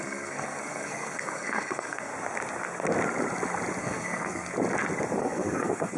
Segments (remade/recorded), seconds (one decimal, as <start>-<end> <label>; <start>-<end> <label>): 0.0-2.1 remade; 2.1-3.8 recorded; 3.8-4.5 remade; 4.5-5.2 recorded; 5.2-6.0 remade